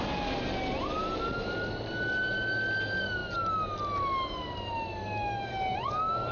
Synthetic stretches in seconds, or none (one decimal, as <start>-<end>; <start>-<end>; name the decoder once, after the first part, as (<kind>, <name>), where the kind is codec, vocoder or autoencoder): none

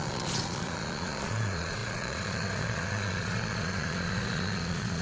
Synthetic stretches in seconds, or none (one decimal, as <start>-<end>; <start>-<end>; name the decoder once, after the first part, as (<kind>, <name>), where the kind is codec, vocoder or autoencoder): 0.0-5.0 (vocoder, Vocos)

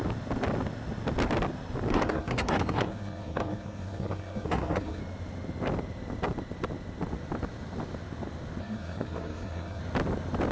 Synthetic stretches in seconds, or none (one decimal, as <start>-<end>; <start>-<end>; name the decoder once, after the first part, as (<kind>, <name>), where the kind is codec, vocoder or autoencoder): 1.9-5.0 (codec, SNAC); 8.6-9.8

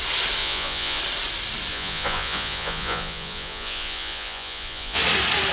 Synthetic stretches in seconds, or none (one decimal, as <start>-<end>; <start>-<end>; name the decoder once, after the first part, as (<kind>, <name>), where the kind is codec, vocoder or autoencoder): 0.4-1.0 (vocoder, Vocos); 1.7-5.0

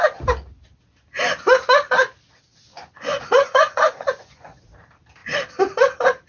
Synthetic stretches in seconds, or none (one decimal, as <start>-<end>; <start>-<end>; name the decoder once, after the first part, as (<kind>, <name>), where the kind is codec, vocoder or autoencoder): 2.7-4.6 (vocoder, Vocos)

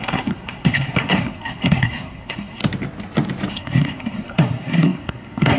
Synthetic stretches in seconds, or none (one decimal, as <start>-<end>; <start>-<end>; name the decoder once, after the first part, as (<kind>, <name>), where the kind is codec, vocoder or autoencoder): 0.0-2.6 (codec, SNAC); 3.5-5.6

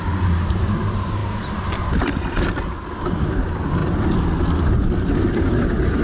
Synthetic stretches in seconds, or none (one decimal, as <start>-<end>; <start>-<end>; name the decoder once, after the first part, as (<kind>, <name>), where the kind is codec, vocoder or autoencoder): none